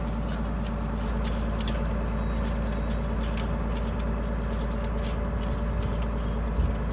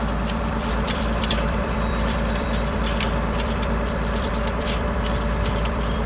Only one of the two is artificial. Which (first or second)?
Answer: second